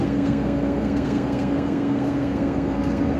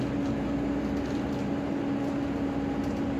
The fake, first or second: first